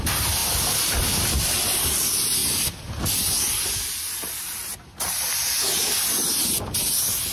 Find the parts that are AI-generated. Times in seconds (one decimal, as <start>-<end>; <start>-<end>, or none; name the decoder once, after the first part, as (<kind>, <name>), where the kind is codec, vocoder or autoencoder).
none